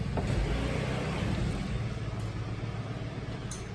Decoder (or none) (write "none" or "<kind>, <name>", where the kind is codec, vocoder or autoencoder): none